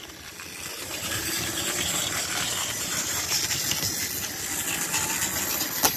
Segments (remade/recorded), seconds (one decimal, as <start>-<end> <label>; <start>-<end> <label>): 0.0-0.7 recorded; 0.7-3.4 remade; 3.4-6.0 recorded